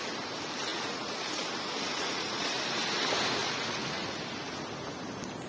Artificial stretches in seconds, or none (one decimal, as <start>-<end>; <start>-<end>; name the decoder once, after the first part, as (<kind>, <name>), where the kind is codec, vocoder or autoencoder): 0.7-1.4 (vocoder, Vocos); 1.9-2.6; 3.4-4.2